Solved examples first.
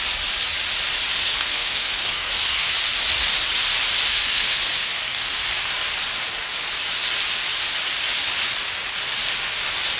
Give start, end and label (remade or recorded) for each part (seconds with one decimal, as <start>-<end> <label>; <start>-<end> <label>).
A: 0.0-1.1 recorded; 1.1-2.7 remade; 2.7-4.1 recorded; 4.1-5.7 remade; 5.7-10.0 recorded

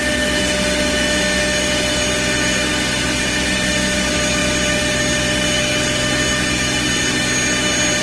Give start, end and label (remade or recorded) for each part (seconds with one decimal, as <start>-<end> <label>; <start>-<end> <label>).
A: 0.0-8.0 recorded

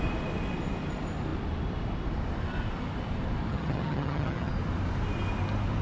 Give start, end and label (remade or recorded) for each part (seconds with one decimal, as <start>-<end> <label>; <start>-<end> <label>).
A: 0.0-3.5 recorded; 3.5-4.5 remade; 4.5-5.8 recorded

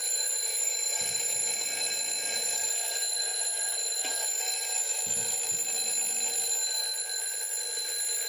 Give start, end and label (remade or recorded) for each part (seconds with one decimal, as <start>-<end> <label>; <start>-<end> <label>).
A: 0.0-5.0 remade; 5.0-8.3 recorded

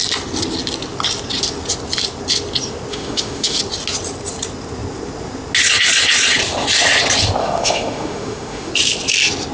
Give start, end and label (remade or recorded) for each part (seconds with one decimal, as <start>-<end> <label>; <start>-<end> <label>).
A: 0.0-2.9 recorded; 2.9-3.6 remade; 3.6-7.4 recorded; 7.4-8.7 remade; 8.7-9.5 recorded

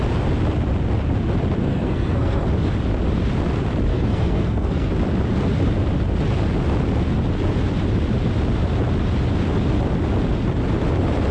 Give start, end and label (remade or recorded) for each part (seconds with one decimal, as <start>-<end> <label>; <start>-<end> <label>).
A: 0.0-1.6 recorded; 1.6-2.4 remade; 2.4-3.9 recorded; 3.9-4.9 remade; 4.9-11.3 recorded

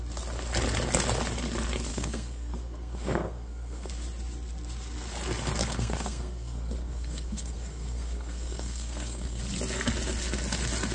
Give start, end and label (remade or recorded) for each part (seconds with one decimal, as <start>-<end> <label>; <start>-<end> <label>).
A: 0.0-1.9 recorded; 1.9-3.9 remade; 3.9-5.6 recorded; 5.6-9.4 remade; 9.4-10.9 recorded